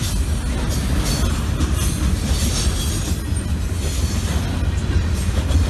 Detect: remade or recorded recorded